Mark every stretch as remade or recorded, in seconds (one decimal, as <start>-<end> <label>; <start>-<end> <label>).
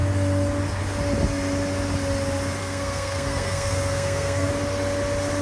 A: 0.0-2.6 recorded; 2.6-4.5 remade; 4.5-5.4 recorded